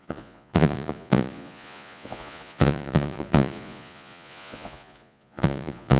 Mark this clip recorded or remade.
remade